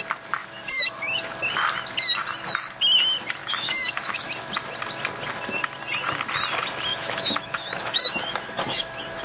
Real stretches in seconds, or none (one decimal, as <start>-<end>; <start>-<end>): 0.0-0.4; 1.2-3.4; 4.3-6.9